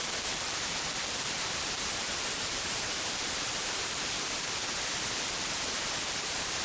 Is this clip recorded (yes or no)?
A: no